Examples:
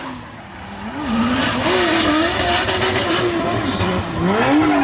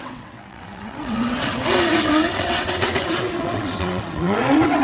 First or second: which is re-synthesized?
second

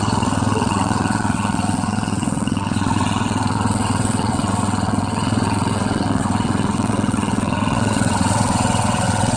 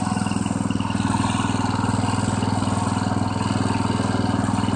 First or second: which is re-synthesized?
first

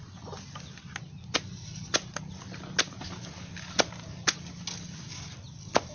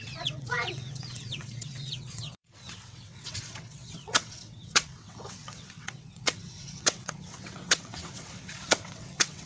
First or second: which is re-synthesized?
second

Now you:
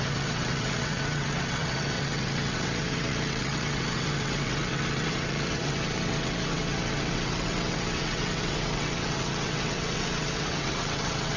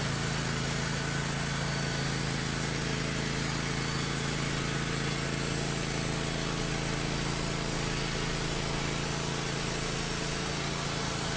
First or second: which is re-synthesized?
first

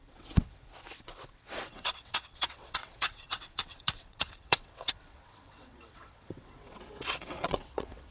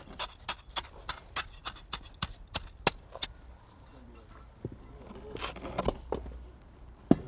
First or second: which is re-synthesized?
first